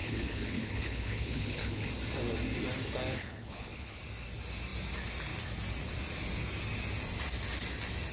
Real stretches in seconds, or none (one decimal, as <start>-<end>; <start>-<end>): 1.9-3.2; 4.0-8.1